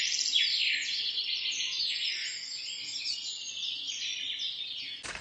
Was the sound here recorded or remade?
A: recorded